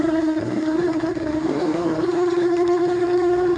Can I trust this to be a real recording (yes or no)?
no